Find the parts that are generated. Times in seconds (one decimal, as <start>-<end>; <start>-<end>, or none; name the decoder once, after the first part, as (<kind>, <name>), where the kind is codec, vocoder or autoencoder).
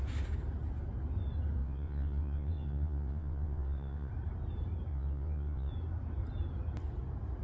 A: 1.6-4.1 (vocoder, WaveNeXt); 4.9-5.7